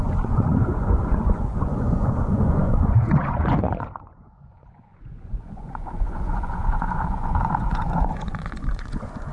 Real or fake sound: fake